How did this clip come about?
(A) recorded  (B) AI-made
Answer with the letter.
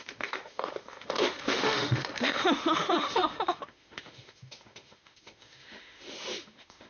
B